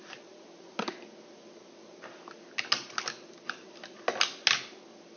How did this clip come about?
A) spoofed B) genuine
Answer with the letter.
B